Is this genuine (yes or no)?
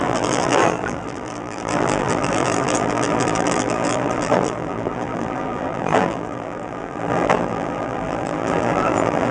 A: no